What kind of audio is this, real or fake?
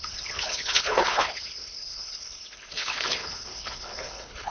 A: fake